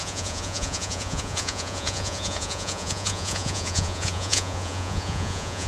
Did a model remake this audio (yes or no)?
yes